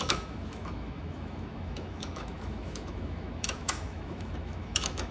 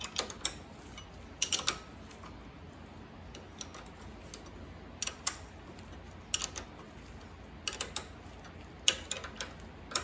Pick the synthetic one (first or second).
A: first